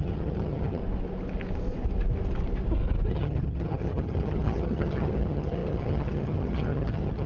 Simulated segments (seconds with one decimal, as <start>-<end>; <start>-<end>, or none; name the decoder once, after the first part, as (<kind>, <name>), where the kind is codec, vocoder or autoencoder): 0.0-0.8 (vocoder, HiFi-GAN); 3.1-7.3